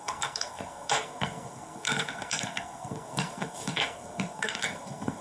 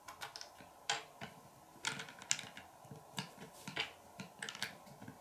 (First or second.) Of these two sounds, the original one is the second